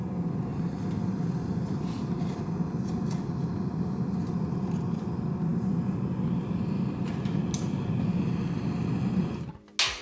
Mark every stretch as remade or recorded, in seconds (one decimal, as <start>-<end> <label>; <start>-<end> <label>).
0.0-0.5 recorded; 0.5-2.4 remade; 2.4-10.0 recorded